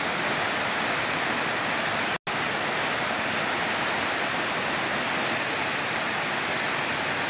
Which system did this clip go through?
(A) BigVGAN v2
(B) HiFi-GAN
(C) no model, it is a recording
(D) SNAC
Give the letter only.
C